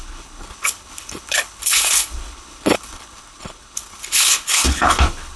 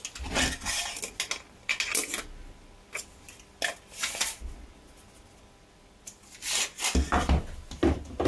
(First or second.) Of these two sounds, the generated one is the first